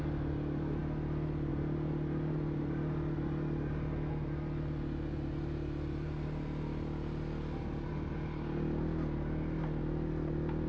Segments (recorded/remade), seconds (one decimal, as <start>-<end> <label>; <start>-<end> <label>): 0.0-10.7 recorded